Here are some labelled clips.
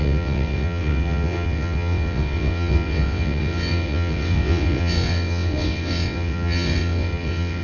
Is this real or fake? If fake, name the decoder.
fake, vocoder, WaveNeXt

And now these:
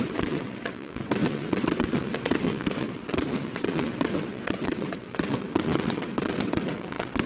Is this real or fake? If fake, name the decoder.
fake, vocoder, WaveNeXt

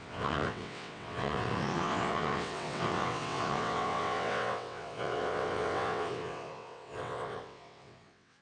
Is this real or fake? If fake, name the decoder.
fake, vocoder, WaveNeXt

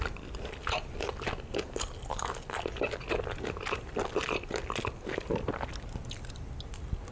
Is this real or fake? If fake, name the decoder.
real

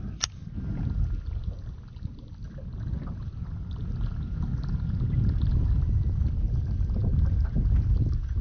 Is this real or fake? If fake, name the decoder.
real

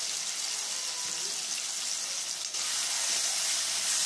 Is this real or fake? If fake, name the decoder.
real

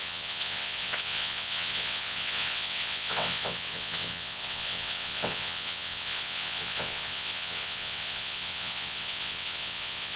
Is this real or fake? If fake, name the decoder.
fake, vocoder, WaveNeXt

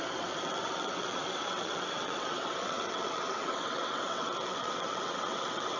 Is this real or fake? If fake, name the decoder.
fake, vocoder, WaveNeXt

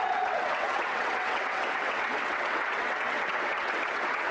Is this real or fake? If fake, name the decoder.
fake, vocoder, WaveNeXt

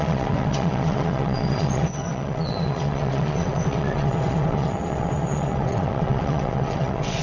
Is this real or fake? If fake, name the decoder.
fake, vocoder, WaveNeXt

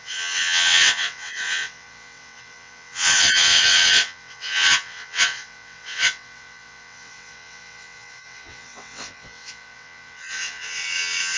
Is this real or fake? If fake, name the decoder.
fake, vocoder, WaveNeXt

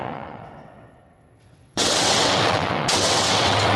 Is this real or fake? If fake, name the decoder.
fake, vocoder, WaveNeXt